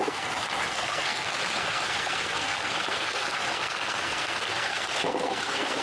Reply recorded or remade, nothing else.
remade